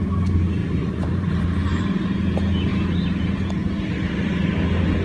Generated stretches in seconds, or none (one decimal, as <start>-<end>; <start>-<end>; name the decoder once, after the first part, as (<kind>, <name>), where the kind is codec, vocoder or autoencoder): 0.6-1.8 (vocoder, BigVGAN v2)